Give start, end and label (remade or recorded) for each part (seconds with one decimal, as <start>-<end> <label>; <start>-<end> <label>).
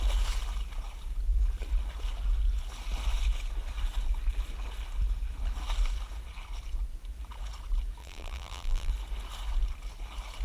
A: 0.0-8.0 recorded; 8.0-8.9 remade; 8.9-10.4 recorded